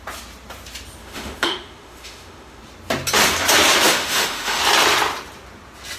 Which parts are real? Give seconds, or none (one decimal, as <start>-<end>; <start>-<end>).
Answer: 0.0-1.0; 2.6-3.9; 4.6-6.0